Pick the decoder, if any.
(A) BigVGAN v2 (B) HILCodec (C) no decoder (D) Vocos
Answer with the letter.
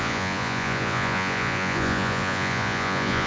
D